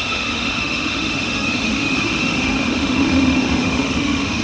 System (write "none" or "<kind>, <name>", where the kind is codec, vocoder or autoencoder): autoencoder, DAC-VAE